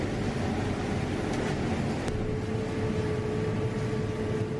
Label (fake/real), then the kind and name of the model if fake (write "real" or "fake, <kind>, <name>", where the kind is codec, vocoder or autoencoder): real